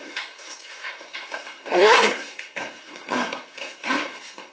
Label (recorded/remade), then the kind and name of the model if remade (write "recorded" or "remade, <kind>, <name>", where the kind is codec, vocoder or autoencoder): remade, codec, SNAC